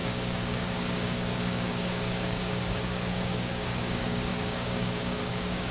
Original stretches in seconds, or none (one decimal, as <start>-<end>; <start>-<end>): none